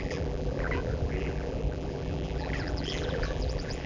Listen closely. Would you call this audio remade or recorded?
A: remade